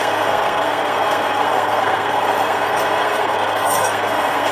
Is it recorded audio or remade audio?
remade